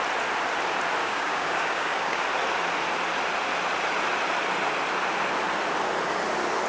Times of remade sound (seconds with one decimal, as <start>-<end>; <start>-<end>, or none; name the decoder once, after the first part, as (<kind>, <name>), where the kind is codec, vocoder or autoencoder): 1.0-2.2 (codec, DAC)